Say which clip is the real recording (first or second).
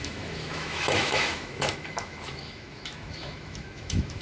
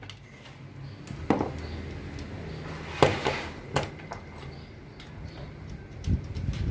second